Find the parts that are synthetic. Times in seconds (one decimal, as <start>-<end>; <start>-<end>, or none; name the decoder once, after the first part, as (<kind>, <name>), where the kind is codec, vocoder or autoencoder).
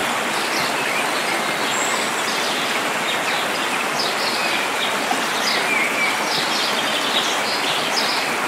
4.4-5.1 (vocoder, BigVGAN v2)